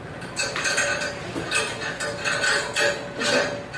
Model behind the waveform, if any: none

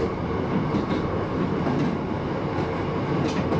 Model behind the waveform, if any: none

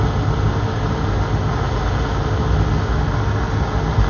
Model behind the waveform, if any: none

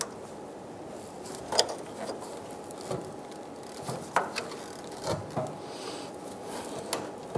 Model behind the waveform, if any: none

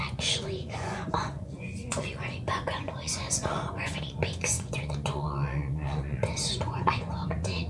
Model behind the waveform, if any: vocoder, Vocos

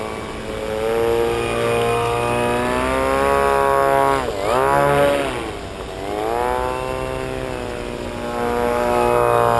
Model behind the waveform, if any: none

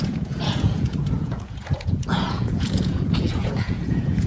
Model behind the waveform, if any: vocoder, Vocos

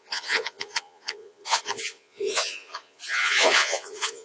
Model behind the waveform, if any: vocoder, Vocos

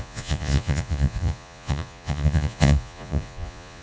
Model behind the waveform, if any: vocoder, Vocos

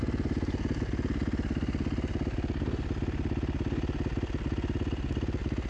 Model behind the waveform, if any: none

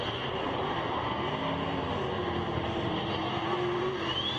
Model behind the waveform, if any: none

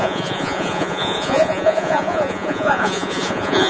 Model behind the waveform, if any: vocoder, Vocos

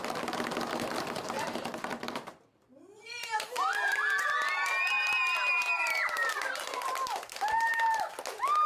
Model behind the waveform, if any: none